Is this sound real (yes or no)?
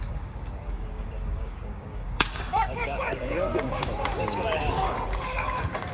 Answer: no